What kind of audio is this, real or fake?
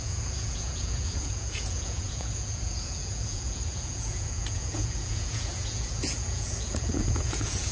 fake